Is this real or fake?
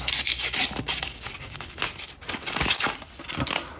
real